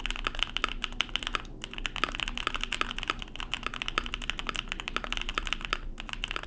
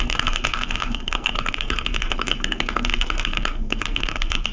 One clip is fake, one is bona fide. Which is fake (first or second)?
second